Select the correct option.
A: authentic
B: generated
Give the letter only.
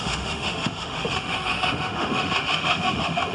B